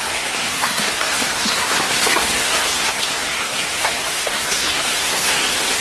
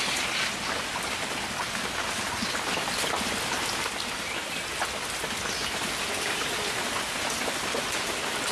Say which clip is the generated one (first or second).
first